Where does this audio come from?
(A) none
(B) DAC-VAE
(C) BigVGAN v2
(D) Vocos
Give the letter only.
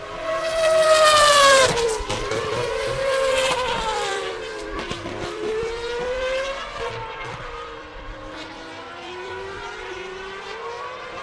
C